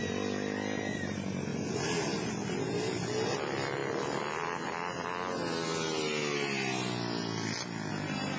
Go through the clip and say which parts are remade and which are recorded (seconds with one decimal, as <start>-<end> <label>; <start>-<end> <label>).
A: 0.0-8.4 recorded